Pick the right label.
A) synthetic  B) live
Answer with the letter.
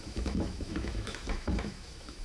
A